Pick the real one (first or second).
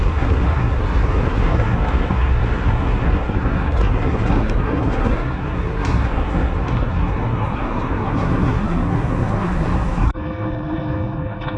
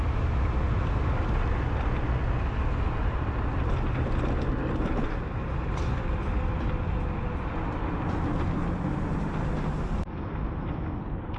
second